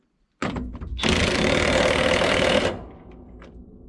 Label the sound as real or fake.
fake